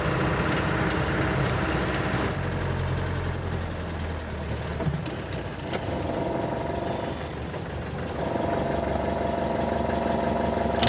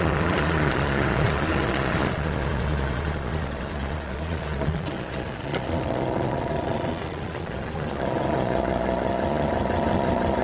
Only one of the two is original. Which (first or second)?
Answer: first